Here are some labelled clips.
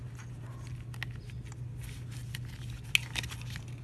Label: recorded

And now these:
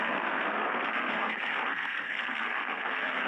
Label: remade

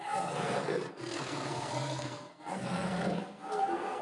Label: remade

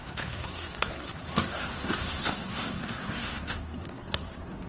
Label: remade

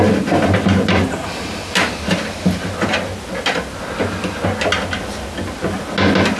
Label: recorded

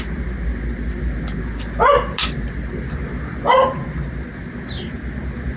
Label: recorded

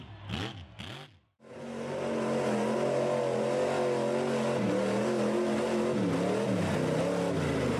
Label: recorded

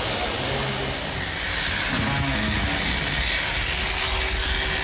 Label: recorded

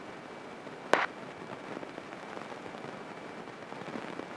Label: recorded